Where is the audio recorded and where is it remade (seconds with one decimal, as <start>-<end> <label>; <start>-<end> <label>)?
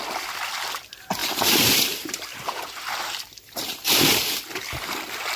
0.0-1.2 recorded; 1.2-4.4 remade; 4.4-5.4 recorded